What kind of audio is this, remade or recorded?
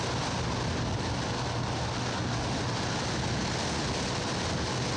recorded